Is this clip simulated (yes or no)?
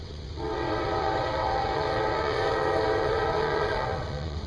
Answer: yes